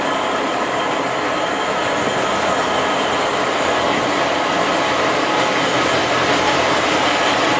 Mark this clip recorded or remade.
recorded